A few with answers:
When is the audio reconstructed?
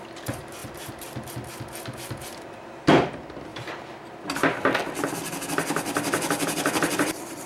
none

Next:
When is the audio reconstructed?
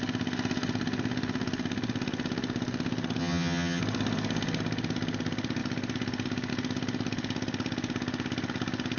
3.2-3.8 (vocoder, HiFi-GAN)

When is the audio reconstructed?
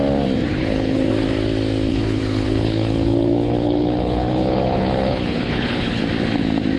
0.6-1.1 (codec, HILCodec); 1.9-6.0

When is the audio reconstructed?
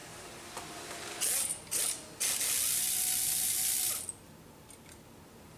none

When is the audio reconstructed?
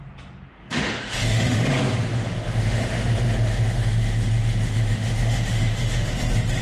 0.5-1.7 (autoencoder, DAC-VAE); 2.1-6.1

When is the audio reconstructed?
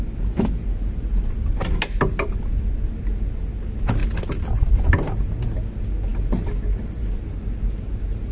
none